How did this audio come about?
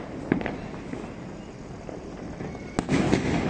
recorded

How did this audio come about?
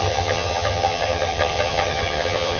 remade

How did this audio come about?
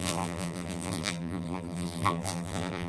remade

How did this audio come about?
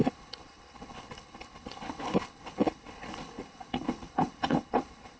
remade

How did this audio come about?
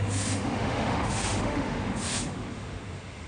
remade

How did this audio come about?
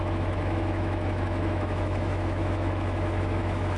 remade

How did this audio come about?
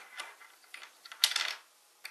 recorded